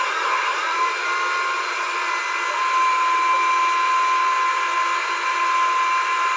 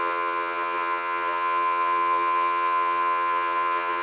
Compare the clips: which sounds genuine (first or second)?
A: first